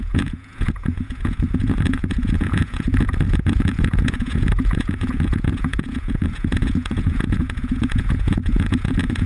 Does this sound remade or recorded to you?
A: remade